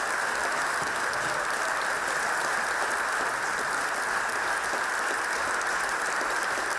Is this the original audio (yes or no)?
yes